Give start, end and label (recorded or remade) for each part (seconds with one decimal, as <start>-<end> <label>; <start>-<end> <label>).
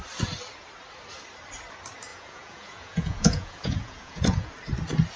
0.0-2.1 recorded; 2.1-4.5 remade; 4.5-5.2 recorded